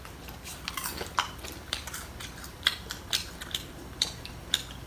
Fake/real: fake